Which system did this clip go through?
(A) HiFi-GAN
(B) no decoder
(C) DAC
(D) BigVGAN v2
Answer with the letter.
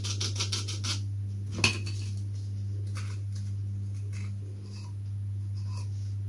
B